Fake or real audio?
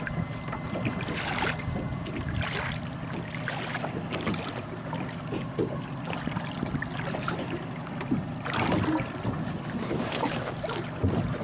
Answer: real